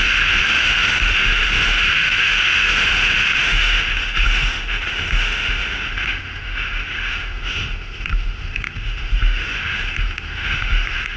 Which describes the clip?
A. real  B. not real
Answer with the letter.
B